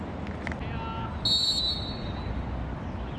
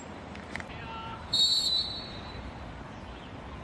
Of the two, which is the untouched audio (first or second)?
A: first